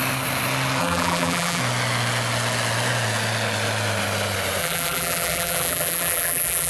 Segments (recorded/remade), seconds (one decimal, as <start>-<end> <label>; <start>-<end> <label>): 0.0-0.8 recorded; 0.8-1.6 remade; 1.6-4.6 recorded; 4.6-6.7 remade